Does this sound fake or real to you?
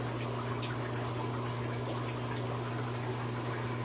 real